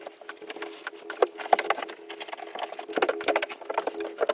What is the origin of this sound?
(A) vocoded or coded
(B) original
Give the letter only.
B